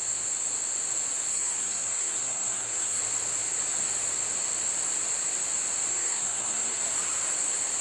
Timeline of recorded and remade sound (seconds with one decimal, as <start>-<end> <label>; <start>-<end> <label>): 0.0-1.3 recorded; 1.3-3.0 remade; 3.0-5.9 recorded; 5.9-6.8 remade; 6.8-7.8 recorded